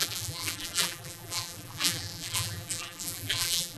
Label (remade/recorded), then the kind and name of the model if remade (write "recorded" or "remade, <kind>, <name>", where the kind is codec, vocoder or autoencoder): remade, vocoder, BigVGAN v2